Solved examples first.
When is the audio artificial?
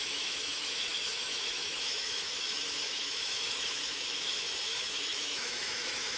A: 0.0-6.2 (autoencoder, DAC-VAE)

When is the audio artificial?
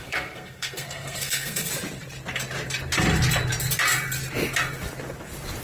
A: 0.0-1.7 (codec, SNAC)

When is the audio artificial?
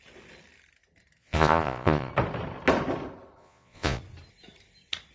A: 1.2-2.1 (vocoder, Vocos); 3.4-4.0